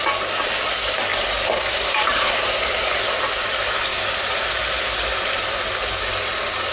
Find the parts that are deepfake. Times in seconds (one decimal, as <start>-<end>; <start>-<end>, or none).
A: 1.1-3.0